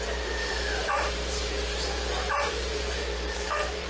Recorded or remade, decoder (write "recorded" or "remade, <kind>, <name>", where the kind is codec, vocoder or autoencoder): remade, vocoder, BigVGAN v2